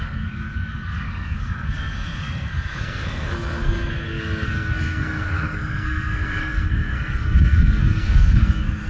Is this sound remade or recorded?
remade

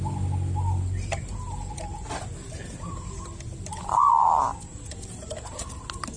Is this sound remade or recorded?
recorded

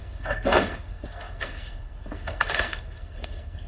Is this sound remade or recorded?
remade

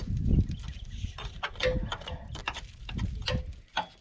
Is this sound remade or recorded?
recorded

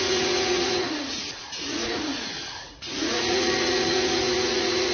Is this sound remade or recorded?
remade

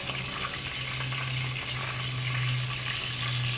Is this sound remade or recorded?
recorded